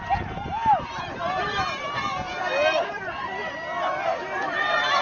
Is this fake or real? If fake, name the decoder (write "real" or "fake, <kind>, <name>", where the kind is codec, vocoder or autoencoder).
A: real